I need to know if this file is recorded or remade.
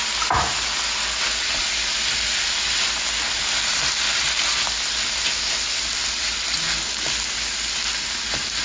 recorded